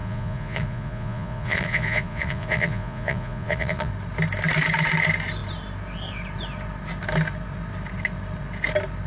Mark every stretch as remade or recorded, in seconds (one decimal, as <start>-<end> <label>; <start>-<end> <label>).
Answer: 0.0-3.9 remade; 3.9-9.1 recorded